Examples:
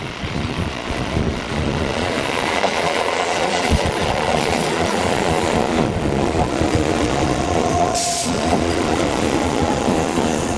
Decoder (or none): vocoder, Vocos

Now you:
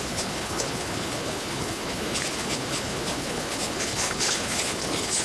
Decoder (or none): codec, HILCodec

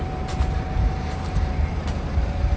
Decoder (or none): vocoder, BigVGAN v2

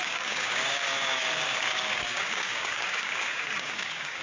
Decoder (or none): codec, DAC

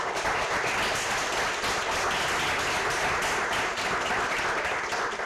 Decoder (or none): none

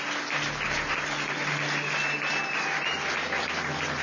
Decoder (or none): none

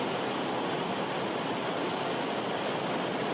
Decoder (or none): none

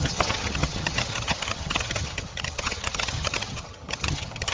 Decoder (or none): vocoder, HiFi-GAN